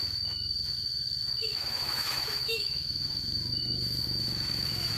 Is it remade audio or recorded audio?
remade